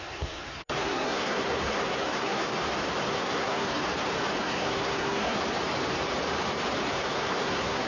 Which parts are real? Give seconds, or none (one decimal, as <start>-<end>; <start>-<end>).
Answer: 2.5-3.1; 3.8-4.4; 5.4-6.9